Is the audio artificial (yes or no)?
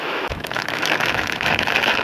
yes